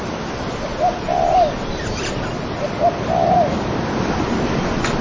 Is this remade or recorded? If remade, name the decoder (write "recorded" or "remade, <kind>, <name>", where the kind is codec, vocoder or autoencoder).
recorded